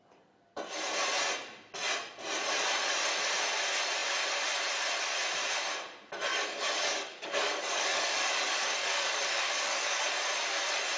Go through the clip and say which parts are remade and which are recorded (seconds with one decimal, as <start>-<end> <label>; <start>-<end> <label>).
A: 0.0-6.3 recorded; 6.3-10.0 remade; 10.0-11.0 recorded